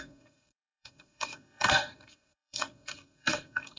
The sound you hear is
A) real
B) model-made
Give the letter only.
B